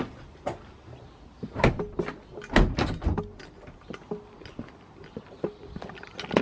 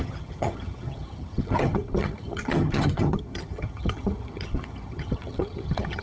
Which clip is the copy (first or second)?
second